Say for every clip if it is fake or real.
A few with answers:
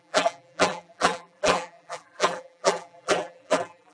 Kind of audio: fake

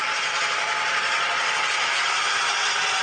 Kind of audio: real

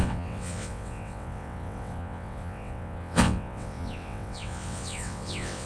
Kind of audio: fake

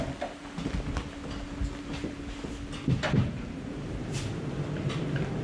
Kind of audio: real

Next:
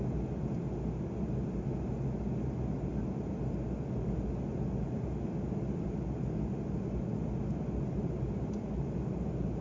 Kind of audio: real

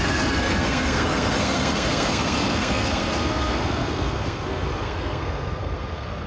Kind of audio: fake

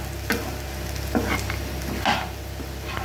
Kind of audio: real